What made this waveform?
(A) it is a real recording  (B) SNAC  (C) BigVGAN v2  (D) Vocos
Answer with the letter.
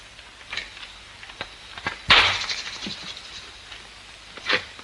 A